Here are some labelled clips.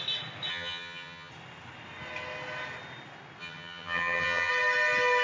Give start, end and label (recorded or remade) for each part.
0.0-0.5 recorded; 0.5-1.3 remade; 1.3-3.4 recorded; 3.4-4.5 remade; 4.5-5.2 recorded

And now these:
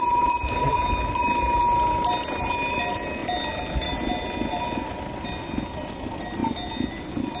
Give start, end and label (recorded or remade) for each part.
0.0-7.4 recorded

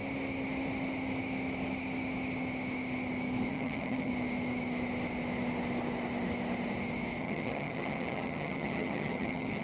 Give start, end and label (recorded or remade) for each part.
0.0-3.5 recorded; 3.5-4.1 remade; 4.1-7.2 recorded; 7.2-9.6 remade

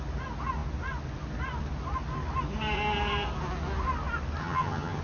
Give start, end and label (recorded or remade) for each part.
0.0-4.4 recorded; 4.4-5.0 remade

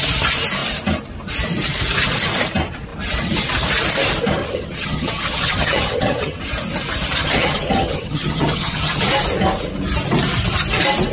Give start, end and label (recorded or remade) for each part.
0.0-4.4 recorded; 4.4-6.4 remade; 6.4-7.2 recorded; 7.2-9.0 remade; 9.0-11.1 recorded

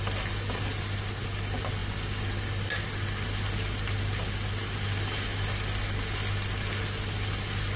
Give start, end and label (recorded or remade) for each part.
0.0-7.8 recorded